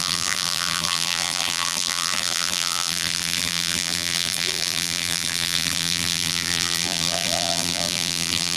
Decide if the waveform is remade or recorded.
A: remade